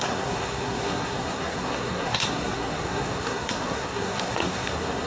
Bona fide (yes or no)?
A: no